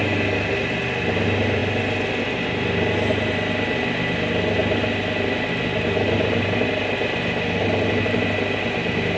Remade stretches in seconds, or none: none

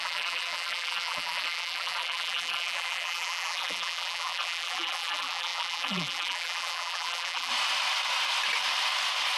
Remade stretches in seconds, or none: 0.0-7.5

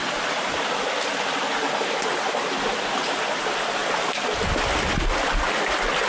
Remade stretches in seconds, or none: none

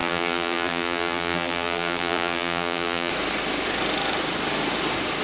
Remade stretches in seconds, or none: 0.0-3.1

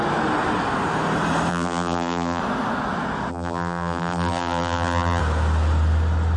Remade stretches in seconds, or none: 1.5-2.4; 3.3-5.2

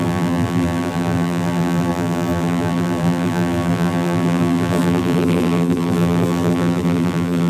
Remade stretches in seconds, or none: 0.0-7.5